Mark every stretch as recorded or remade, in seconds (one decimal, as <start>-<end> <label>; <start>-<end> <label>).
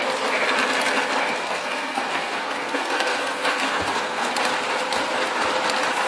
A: 0.0-1.4 recorded; 1.4-4.3 remade; 4.3-6.1 recorded